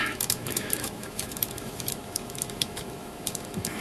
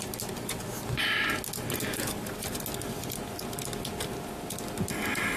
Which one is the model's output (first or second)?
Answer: first